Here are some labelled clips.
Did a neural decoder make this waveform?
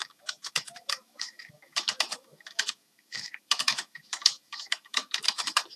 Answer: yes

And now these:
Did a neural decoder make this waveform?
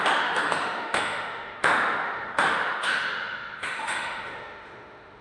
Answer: yes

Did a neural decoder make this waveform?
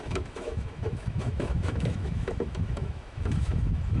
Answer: yes